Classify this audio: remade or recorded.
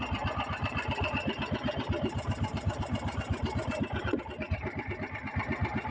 remade